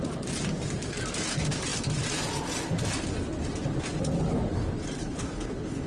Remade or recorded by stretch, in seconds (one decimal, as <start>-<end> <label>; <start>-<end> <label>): 0.0-5.0 recorded; 5.0-5.9 remade